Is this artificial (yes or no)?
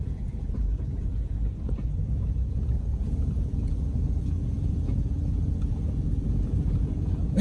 yes